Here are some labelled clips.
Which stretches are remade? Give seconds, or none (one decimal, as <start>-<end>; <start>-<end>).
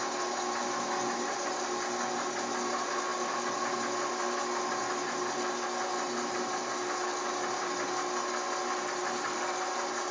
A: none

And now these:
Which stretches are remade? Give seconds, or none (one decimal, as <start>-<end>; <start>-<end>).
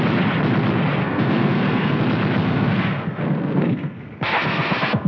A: 1.0-2.0; 2.4-5.1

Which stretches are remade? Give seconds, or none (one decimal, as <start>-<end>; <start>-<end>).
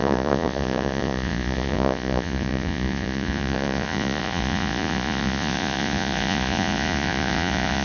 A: 0.0-7.8